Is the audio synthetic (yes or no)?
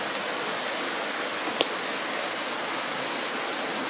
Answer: no